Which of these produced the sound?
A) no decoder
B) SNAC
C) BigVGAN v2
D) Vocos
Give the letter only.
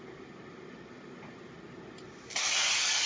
A